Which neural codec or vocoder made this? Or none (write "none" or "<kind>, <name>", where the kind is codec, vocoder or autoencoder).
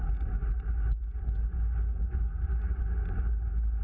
none